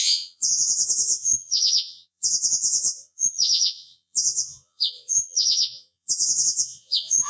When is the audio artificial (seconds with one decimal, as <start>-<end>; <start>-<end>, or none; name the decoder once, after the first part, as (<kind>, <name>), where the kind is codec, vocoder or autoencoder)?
0.0-7.3 (vocoder, Vocos)